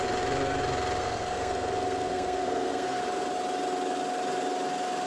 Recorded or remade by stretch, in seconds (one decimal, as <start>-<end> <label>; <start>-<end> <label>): 0.0-1.0 recorded; 1.0-3.0 remade; 3.0-5.1 recorded